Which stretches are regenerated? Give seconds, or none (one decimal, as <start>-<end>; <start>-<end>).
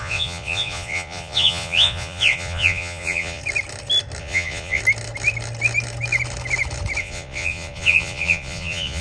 0.0-3.4; 4.2-4.8; 7.0-9.0